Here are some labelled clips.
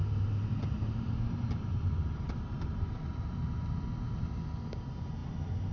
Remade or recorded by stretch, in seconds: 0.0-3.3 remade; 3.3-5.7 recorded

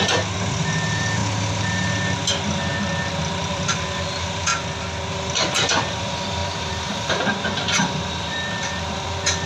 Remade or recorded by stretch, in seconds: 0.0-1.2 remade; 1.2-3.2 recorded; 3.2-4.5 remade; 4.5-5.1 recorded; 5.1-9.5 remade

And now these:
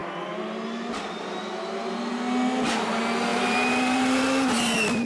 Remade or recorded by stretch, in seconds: 0.0-3.3 recorded; 3.3-4.2 remade; 4.2-5.1 recorded

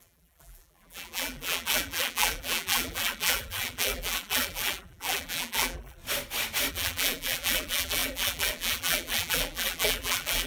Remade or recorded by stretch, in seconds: 0.0-6.0 remade; 6.0-6.7 recorded; 6.7-10.5 remade

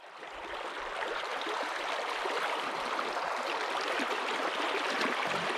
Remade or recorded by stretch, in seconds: 0.0-1.3 remade; 1.3-4.7 recorded; 4.7-5.6 remade

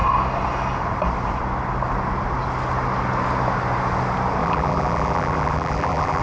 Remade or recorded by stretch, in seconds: 0.0-4.4 recorded; 4.4-6.2 remade

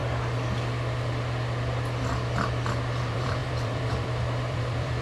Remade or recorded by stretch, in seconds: 0.0-3.0 recorded; 3.0-5.0 remade

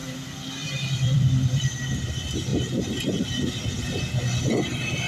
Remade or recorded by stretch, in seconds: 0.0-2.1 remade; 2.1-2.5 recorded; 2.5-3.3 remade; 3.3-5.1 recorded